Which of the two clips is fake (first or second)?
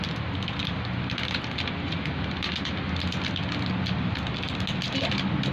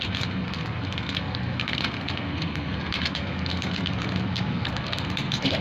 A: second